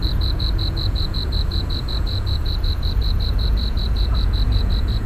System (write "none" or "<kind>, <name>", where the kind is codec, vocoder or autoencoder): vocoder, Vocos